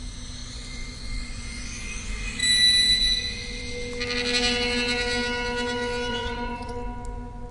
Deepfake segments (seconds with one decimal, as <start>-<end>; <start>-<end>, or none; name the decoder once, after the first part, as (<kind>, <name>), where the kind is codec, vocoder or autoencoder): 0.4-1.8 (vocoder, Vocos); 6.1-6.7